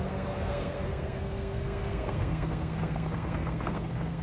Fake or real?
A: fake